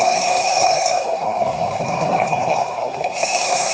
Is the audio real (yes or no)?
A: no